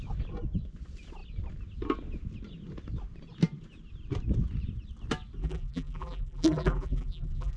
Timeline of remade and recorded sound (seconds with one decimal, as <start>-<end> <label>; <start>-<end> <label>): 0.0-5.4 recorded; 5.4-7.6 remade